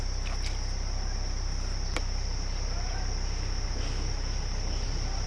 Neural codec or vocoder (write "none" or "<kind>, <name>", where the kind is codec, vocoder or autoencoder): none